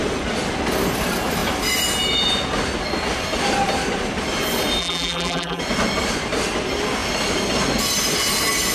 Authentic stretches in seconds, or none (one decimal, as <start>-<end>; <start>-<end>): 0.0-4.8; 5.6-8.7